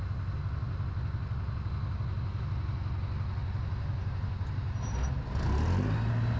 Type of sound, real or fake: real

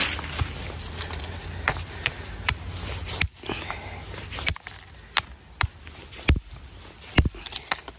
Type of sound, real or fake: real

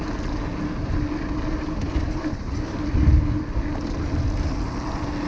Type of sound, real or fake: real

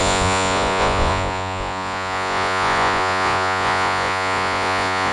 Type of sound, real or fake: fake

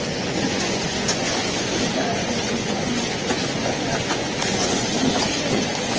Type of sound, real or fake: fake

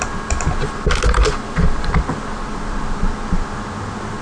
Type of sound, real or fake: real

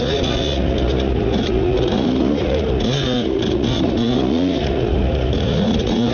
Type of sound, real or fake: fake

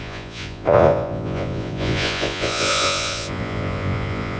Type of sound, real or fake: fake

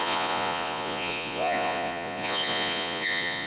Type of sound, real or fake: fake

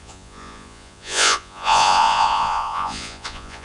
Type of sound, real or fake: fake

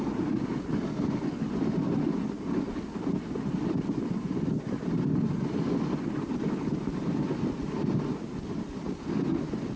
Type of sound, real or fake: real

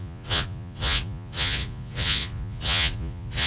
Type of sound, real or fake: fake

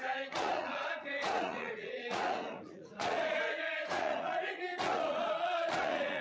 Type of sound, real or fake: fake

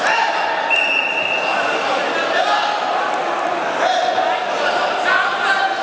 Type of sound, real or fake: real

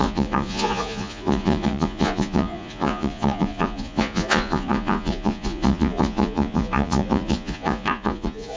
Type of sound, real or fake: fake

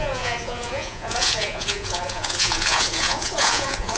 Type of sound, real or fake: fake